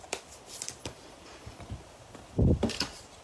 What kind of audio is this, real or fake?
fake